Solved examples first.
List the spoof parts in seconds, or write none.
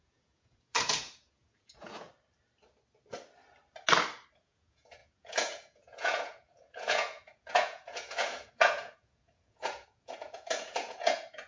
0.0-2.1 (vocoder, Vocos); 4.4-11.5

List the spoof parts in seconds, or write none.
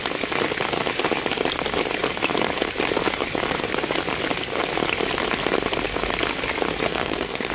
6.9-7.5 (codec, SNAC)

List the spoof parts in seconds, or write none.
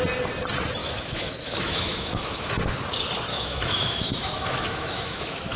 0.8-2.5 (autoencoder, DAC-VAE); 3.3-5.6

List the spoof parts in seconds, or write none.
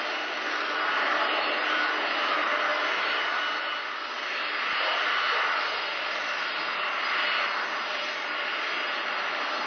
none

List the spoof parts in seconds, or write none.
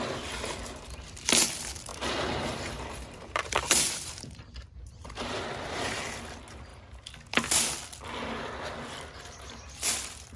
1.9-6.0 (vocoder, BigVGAN v2)